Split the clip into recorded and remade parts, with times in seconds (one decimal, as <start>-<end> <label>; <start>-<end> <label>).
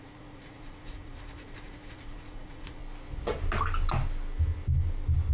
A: 0.0-2.8 remade; 2.8-5.3 recorded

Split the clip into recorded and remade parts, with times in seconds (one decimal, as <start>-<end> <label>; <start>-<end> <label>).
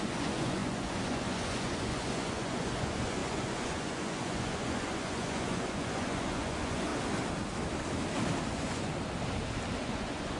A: 0.0-6.9 remade; 6.9-8.4 recorded; 8.4-8.9 remade; 8.9-9.8 recorded; 9.8-10.4 remade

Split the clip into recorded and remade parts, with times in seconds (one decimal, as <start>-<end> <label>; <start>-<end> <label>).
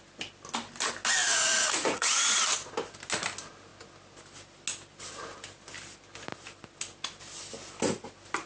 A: 0.0-1.2 recorded; 1.2-2.4 remade; 2.4-8.5 recorded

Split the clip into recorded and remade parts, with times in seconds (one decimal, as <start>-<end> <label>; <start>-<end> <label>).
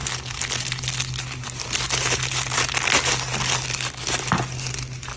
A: 0.0-5.2 recorded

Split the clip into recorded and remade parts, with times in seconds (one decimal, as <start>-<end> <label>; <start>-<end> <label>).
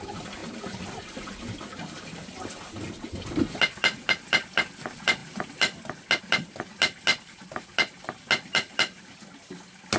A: 0.0-10.0 recorded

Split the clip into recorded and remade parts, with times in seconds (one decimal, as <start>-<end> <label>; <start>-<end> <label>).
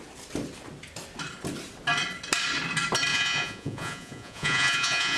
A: 0.0-3.1 recorded; 3.1-5.2 remade